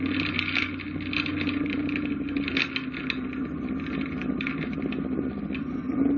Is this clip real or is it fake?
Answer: real